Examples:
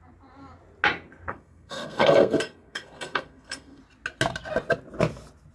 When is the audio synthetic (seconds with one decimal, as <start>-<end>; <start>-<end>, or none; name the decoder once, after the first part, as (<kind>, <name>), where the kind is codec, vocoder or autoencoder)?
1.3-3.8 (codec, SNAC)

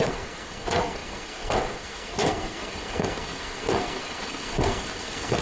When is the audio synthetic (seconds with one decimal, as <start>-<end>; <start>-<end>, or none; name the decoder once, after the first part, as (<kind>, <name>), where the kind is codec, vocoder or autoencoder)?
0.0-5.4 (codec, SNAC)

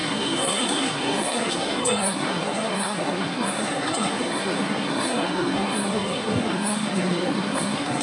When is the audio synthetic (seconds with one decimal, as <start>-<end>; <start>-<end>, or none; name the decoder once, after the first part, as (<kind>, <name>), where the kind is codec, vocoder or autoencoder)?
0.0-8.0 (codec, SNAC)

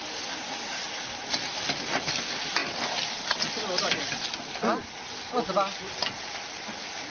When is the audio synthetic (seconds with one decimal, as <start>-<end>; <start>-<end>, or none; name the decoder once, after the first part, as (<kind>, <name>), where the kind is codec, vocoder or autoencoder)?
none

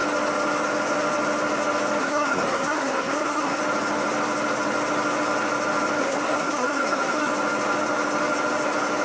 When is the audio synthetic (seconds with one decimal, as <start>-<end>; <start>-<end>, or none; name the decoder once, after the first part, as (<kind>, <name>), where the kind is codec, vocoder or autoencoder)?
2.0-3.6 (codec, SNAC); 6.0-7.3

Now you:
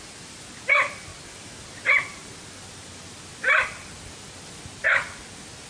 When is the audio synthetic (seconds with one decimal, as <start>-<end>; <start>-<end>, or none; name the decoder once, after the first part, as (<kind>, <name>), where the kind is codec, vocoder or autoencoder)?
none

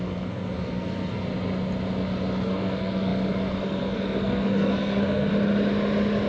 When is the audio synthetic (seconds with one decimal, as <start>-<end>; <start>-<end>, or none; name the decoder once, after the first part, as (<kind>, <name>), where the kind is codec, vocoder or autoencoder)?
0.0-1.2 (codec, SNAC); 2.4-5.3

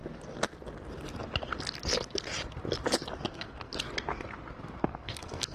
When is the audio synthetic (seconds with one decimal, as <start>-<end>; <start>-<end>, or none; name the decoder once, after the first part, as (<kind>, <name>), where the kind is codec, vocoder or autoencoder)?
3.3-3.7 (codec, SNAC); 4.8-5.5